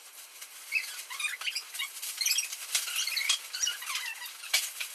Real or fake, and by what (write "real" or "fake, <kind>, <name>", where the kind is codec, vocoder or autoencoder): real